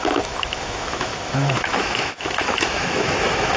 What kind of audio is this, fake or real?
fake